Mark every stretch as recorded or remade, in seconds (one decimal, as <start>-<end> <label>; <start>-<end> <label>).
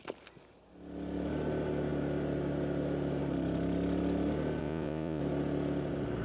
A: 0.0-4.6 recorded; 4.6-5.2 remade; 5.2-6.2 recorded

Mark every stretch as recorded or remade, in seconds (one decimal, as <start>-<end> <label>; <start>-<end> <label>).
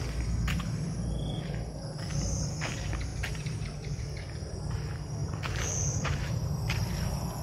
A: 0.0-2.1 recorded; 2.1-2.7 remade; 2.7-3.1 recorded; 3.1-4.0 remade; 4.0-5.2 recorded; 5.2-6.5 remade; 6.5-7.4 recorded